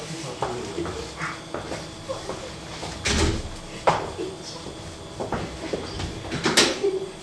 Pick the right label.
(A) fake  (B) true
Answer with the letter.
B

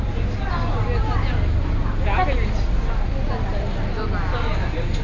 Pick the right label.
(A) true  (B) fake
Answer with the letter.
A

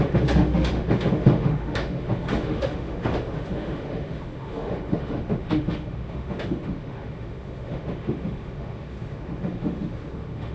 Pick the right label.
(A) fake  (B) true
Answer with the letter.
A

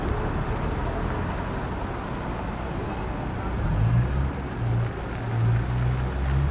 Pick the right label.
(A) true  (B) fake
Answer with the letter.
A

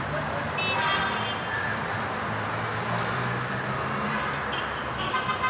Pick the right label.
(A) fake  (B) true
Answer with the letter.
B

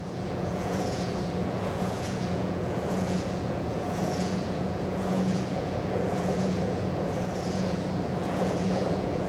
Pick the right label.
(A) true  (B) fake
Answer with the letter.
B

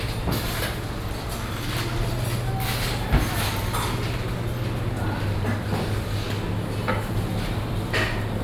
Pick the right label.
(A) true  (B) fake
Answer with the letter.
A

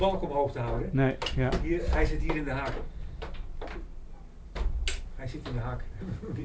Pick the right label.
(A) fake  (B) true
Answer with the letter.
B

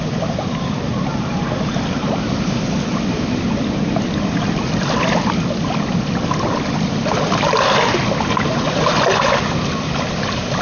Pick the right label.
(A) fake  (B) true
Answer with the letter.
B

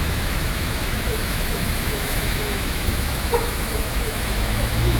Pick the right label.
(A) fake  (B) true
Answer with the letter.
A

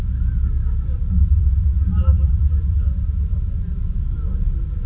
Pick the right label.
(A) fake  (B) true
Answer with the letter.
B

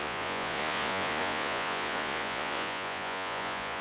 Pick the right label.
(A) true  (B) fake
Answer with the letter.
B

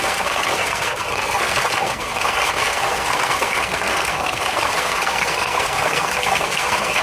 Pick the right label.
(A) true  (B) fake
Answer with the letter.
B